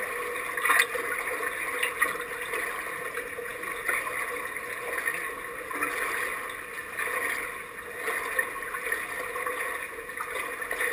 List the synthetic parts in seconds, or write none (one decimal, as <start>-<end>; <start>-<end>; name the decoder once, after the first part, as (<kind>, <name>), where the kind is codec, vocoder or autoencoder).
none